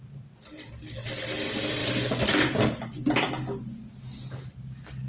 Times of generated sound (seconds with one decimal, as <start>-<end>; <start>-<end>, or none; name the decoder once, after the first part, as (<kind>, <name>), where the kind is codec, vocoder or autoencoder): none